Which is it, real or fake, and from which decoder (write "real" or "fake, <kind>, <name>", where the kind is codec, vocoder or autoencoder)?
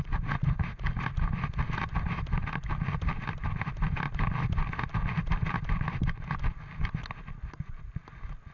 real